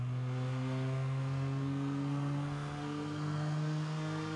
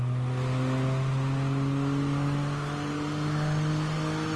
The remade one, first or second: first